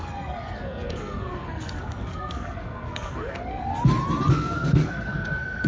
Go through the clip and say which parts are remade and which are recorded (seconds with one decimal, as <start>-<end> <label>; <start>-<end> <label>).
0.0-3.7 remade; 3.7-4.3 recorded; 4.3-5.7 remade

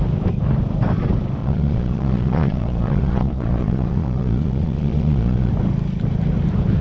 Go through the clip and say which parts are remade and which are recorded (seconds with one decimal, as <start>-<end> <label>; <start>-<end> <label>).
0.0-1.4 recorded; 1.4-5.5 remade; 5.5-6.8 recorded

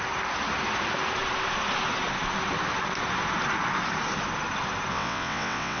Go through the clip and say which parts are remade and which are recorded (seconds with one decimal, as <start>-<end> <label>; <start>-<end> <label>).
0.0-4.9 recorded; 4.9-5.8 remade

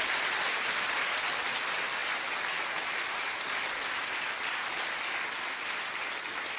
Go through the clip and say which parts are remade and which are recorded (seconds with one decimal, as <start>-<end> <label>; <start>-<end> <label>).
0.0-6.6 recorded

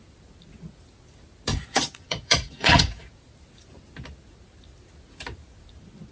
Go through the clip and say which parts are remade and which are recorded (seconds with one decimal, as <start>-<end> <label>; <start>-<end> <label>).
0.0-1.5 recorded; 1.5-3.0 remade; 3.0-6.1 recorded

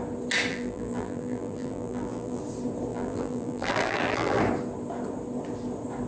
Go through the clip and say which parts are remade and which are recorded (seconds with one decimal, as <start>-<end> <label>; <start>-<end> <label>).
0.0-0.5 recorded; 0.5-2.4 remade; 2.4-2.9 recorded; 2.9-4.4 remade; 4.4-6.1 recorded

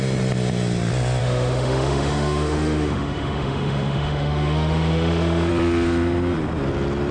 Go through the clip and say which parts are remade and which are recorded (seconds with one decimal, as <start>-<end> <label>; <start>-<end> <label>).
0.0-1.2 recorded; 1.2-5.5 remade; 5.5-7.1 recorded